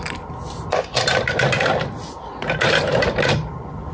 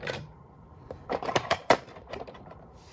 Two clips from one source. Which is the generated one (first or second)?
second